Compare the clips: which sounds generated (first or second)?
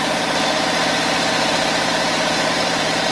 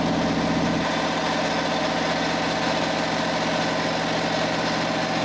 first